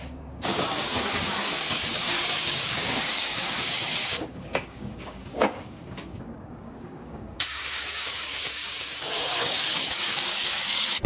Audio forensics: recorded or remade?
remade